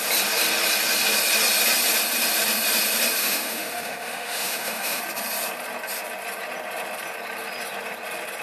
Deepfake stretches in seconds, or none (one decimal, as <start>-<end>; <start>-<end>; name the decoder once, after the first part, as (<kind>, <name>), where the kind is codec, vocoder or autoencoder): 3.2-5.0 (autoencoder, DAC-VAE)